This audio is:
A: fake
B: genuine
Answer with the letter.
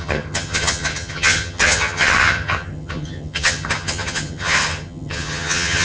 A